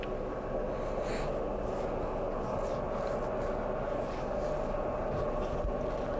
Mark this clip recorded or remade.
recorded